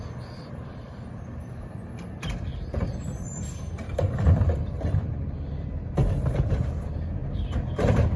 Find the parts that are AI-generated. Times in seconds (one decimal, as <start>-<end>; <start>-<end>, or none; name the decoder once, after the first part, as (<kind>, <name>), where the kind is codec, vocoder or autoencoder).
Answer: 0.7-1.5 (vocoder, BigVGAN v2); 2.5-6.8; 7.2-8.2